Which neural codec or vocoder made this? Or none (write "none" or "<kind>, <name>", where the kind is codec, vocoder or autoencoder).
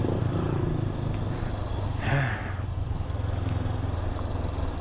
none